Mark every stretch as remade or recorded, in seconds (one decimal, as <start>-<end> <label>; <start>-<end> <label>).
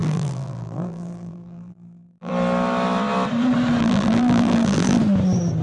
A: 0.0-2.3 remade; 2.3-3.8 recorded; 3.8-5.0 remade; 5.0-5.6 recorded